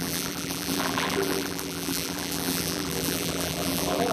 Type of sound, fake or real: fake